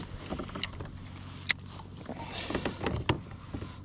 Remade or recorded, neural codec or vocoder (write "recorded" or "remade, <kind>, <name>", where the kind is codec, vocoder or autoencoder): recorded